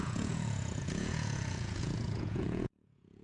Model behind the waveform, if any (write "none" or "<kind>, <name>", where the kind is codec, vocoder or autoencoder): vocoder, Vocos